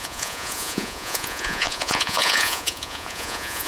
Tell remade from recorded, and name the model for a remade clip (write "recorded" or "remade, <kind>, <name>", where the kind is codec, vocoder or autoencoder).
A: remade, vocoder, Vocos